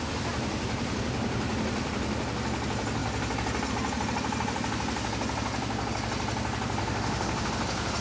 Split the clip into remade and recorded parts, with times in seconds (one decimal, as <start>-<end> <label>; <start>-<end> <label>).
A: 0.0-6.8 recorded; 6.8-7.5 remade; 7.5-8.0 recorded